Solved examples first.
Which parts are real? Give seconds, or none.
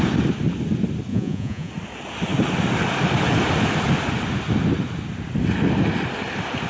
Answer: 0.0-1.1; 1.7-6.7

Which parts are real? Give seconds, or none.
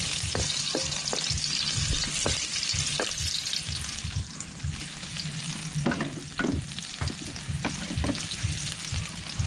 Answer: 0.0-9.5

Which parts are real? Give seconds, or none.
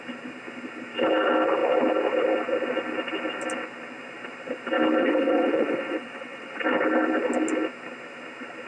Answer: 0.0-5.0; 6.6-8.7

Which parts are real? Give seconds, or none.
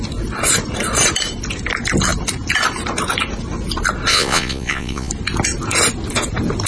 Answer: 0.0-4.1; 5.1-6.7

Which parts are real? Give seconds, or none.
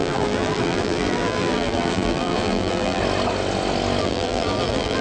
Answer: 3.0-4.0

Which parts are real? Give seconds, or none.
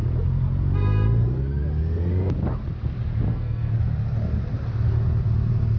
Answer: 0.0-3.3; 3.8-5.8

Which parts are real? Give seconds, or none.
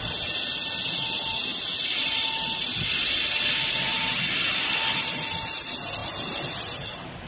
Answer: 0.0-7.3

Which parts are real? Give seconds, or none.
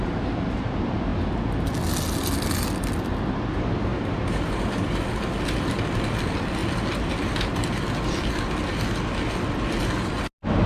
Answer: 0.0-3.9; 4.5-10.7